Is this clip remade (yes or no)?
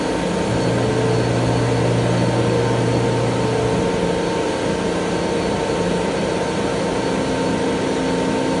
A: no